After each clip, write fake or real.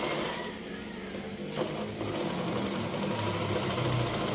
real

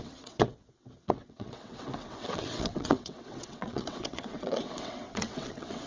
fake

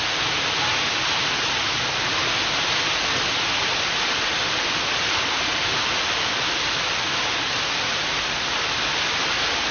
real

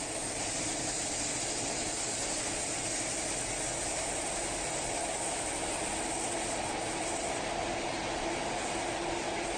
real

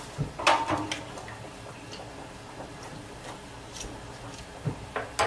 real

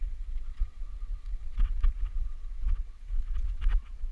fake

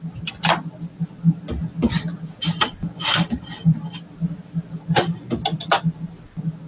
real